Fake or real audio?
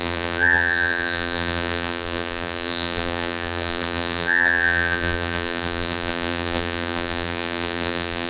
fake